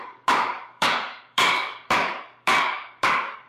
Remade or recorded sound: remade